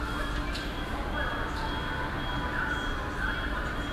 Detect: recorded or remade recorded